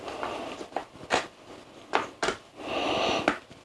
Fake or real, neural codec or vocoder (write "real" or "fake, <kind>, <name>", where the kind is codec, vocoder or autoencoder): real